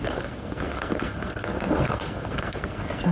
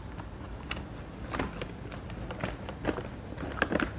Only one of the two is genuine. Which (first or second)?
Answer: second